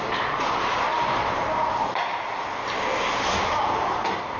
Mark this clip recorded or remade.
recorded